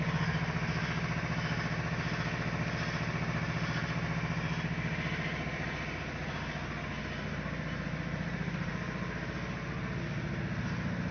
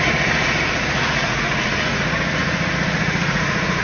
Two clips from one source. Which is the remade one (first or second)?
second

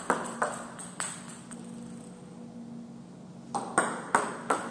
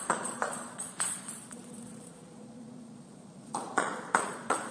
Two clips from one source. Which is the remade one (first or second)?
second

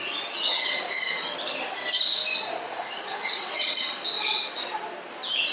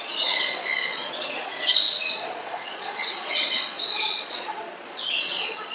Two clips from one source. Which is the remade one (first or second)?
second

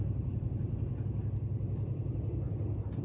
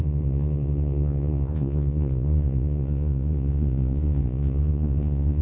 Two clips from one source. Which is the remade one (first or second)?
second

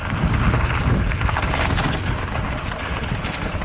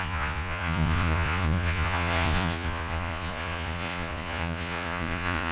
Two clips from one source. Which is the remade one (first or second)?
second